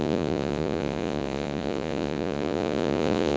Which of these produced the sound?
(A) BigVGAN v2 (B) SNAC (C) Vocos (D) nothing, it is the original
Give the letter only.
C